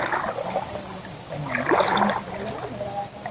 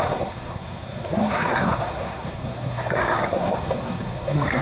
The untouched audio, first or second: first